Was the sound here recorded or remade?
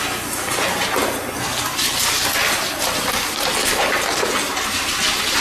recorded